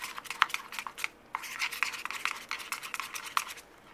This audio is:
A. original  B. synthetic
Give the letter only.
A